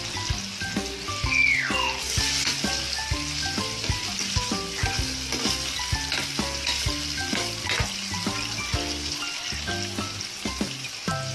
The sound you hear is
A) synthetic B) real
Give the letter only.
B